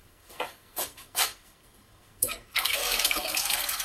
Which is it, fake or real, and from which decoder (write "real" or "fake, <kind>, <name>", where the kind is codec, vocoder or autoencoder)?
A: fake, codec, SNAC